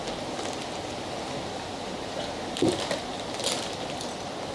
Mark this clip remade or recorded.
recorded